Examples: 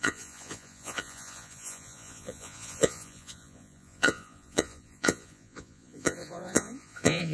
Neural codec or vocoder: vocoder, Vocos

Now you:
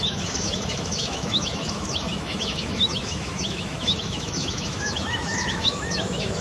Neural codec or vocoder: autoencoder, DAC-VAE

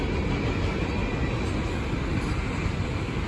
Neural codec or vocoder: none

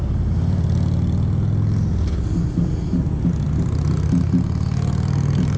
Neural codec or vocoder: none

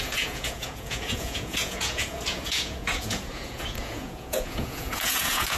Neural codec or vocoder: vocoder, Vocos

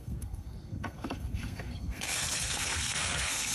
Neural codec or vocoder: codec, SNAC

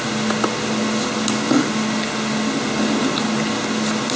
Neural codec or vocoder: none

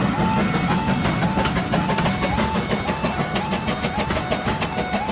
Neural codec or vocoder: none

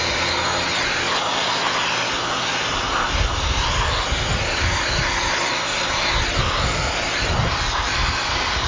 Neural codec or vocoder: none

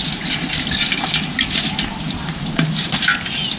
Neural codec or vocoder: none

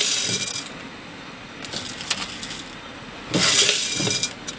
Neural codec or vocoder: none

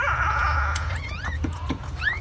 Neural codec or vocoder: vocoder, Vocos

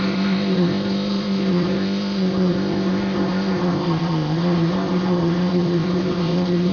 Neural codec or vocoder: codec, ZipCodec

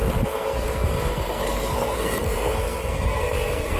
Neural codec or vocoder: codec, SNAC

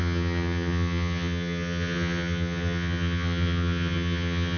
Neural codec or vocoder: vocoder, HiFi-GAN